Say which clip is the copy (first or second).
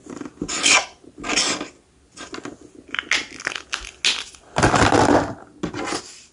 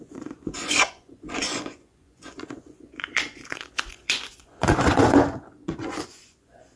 second